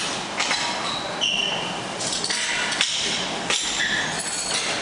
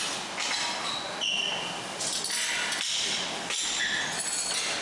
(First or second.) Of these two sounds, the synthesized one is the first